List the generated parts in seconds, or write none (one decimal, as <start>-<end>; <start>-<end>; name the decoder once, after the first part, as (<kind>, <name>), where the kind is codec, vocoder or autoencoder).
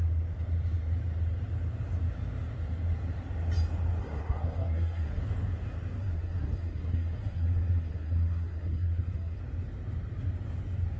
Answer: 4.0-5.2 (codec, SNAC); 6.0-9.4